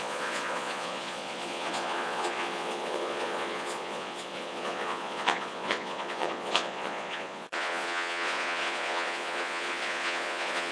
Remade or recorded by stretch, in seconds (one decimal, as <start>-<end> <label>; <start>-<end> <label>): 0.0-10.7 remade